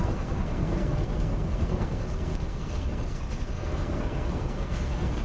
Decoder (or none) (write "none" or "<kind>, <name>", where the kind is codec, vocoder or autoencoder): codec, SNAC